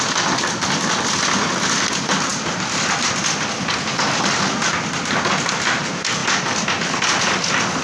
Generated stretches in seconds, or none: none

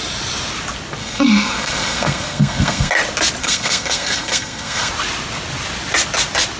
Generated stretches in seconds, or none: 1.0-2.9 (codec, SNAC); 3.4-4.9

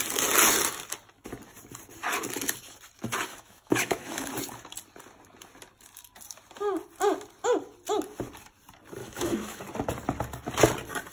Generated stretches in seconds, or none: 3.3-4.3 (autoencoder, DAC-VAE); 9.0-9.6